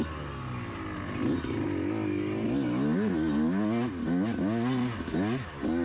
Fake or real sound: real